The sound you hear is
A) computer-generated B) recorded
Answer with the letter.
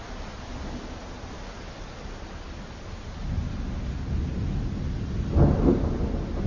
B